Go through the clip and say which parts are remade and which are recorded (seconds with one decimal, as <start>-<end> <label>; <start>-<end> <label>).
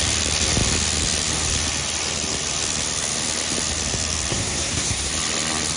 0.0-4.3 recorded; 4.3-5.1 remade; 5.1-5.8 recorded